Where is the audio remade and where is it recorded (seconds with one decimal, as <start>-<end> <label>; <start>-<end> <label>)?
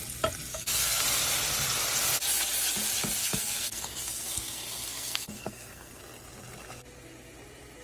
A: 0.0-0.5 recorded; 0.5-1.0 remade; 1.0-3.2 recorded; 3.2-6.0 remade; 6.0-7.8 recorded